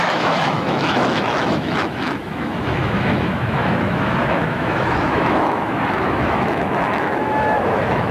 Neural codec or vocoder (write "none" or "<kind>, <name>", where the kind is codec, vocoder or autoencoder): autoencoder, DAC-VAE